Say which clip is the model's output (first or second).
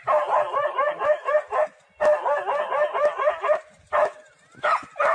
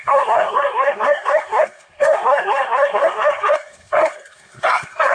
second